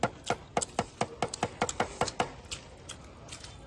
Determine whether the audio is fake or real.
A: real